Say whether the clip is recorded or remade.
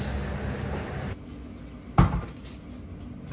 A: recorded